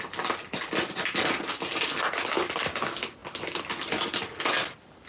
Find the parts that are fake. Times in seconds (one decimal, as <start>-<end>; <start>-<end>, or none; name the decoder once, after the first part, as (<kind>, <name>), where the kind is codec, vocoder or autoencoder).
none

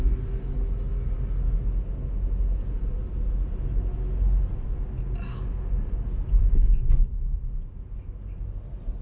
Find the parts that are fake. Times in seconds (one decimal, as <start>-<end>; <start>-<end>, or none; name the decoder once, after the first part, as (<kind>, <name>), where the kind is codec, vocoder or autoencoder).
5.3-5.8 (codec, DAC)

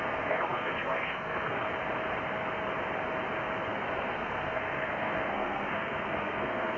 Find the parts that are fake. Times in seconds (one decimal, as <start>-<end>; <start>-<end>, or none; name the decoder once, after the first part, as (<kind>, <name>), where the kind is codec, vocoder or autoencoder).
0.0-1.7 (codec, SNAC); 3.7-6.8

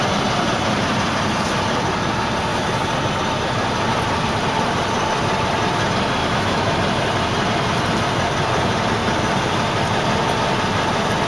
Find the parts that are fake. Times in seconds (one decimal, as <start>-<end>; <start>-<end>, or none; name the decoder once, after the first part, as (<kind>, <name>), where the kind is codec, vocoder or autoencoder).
6.2-6.8 (autoencoder, DAC-VAE)

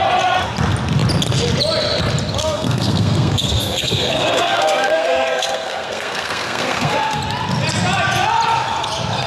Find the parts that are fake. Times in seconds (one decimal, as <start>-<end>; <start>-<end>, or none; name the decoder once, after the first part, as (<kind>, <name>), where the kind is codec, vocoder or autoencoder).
2.4-7.2 (codec, SNAC)

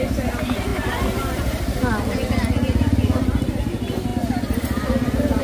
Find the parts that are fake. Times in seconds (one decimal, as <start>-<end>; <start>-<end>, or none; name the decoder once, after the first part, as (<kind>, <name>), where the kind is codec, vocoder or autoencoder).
none

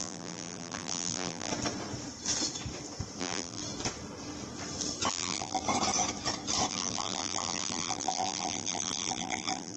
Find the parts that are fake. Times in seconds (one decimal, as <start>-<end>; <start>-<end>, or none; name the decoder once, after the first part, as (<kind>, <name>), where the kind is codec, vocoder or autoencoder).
0.0-1.5 (vocoder, BigVGAN v2); 3.2-3.6; 5.1-5.6; 6.7-9.8